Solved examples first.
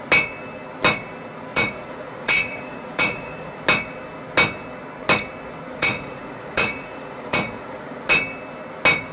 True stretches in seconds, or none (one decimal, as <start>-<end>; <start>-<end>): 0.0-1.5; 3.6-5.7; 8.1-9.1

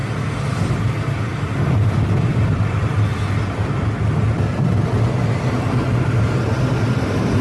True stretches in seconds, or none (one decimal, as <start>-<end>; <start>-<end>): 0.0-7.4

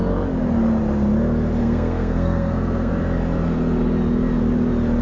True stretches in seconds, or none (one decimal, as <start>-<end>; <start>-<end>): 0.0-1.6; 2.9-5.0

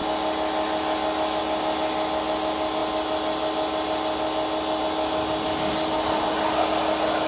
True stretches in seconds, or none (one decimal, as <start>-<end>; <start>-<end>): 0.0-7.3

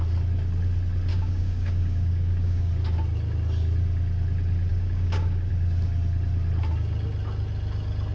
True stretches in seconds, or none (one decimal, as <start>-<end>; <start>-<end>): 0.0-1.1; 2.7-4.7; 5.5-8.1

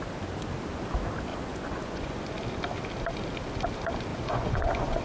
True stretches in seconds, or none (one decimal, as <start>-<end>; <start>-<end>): 0.0-1.3; 2.4-4.1

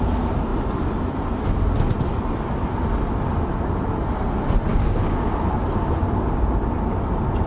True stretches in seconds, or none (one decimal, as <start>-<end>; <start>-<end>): 0.0-4.7; 5.3-7.5